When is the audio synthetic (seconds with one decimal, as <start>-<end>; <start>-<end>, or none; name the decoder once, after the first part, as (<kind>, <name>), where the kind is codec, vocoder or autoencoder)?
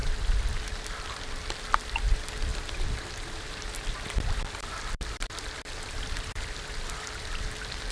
0.0-1.0 (vocoder, BigVGAN v2); 2.5-7.2